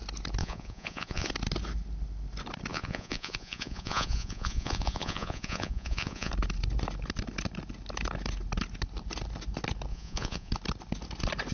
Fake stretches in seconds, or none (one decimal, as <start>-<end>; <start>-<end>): 0.4-1.3; 2.7-6.3; 9.9-10.5